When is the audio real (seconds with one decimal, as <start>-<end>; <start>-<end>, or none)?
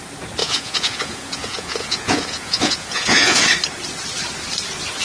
0.0-0.4; 3.4-5.0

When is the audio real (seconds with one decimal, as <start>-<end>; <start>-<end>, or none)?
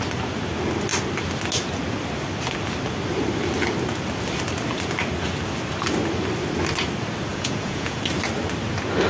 0.0-7.3; 8.0-9.1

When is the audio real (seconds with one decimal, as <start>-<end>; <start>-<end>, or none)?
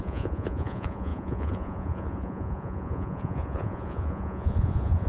none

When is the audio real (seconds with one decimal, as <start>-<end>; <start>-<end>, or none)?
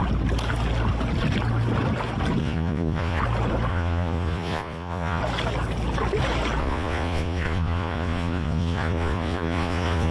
0.0-2.4; 3.2-3.7; 5.2-6.6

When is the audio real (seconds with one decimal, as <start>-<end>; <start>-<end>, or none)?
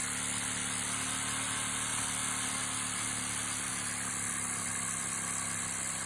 0.0-6.1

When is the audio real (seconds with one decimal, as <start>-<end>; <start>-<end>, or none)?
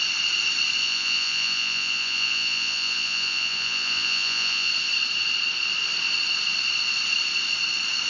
0.0-0.8; 4.7-8.1